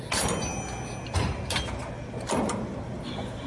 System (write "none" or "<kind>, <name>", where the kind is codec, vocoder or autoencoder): none